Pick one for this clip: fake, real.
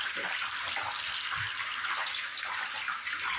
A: real